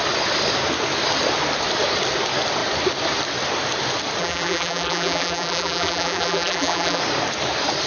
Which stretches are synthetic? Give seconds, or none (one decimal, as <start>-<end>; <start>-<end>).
4.2-7.0